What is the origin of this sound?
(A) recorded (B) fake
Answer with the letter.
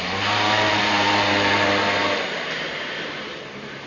B